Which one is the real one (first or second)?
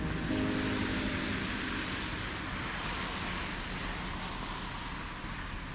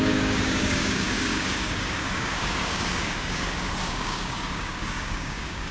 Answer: first